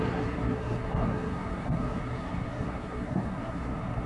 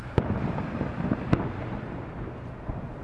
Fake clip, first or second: first